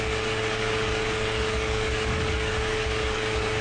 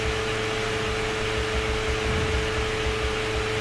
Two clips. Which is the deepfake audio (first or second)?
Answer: first